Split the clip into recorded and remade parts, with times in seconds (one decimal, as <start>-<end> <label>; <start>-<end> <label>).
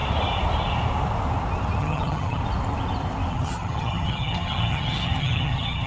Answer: 0.0-1.8 recorded; 1.8-2.4 remade; 2.4-3.3 recorded; 3.3-5.9 remade